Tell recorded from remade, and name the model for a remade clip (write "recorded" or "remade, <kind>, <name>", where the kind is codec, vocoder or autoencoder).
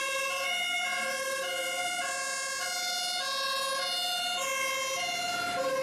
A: recorded